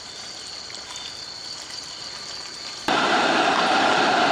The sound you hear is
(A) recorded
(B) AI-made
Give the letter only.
B